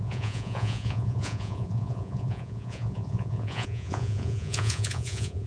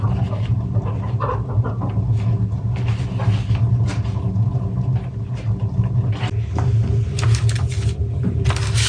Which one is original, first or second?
second